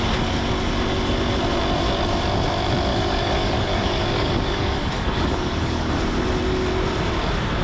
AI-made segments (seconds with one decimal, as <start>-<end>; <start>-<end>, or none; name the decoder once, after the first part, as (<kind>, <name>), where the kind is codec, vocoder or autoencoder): 2.9-5.9 (codec, DAC)